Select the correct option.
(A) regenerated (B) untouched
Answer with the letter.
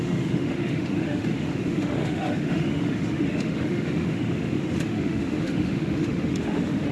A